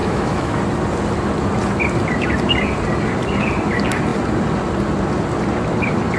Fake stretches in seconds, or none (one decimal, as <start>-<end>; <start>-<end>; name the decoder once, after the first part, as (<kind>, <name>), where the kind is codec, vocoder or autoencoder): 0.0-0.6 (autoencoder, DAC-VAE)